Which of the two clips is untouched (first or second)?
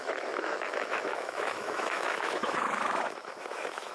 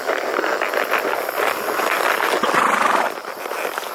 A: second